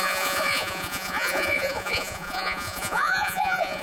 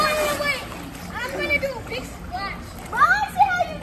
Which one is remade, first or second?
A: first